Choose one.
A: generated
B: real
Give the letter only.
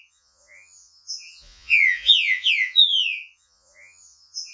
A